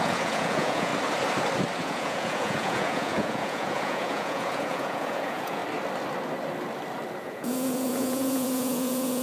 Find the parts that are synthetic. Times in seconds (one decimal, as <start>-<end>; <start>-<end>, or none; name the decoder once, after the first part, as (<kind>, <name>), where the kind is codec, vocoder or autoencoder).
0.0-0.9 (vocoder, Vocos); 1.8-5.6; 7.2-9.2